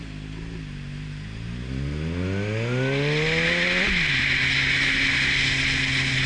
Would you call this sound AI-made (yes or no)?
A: no